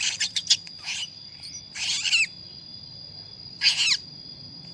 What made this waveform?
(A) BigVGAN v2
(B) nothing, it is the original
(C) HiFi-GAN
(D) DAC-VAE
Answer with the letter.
B